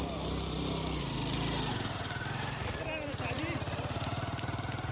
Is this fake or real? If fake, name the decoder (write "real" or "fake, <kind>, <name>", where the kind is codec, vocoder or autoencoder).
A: real